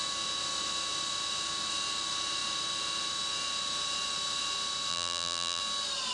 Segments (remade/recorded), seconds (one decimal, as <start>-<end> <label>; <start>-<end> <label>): 0.0-4.9 recorded; 4.9-5.6 remade; 5.6-6.1 recorded